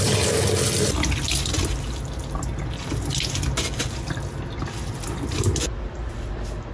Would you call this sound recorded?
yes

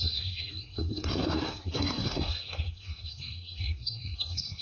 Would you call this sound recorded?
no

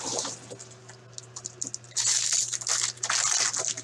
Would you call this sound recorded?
yes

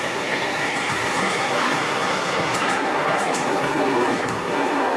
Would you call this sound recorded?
no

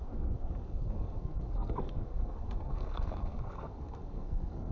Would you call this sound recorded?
no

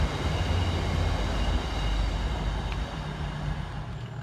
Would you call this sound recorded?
yes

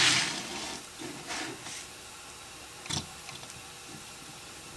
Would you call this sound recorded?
yes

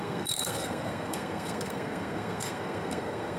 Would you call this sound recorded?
no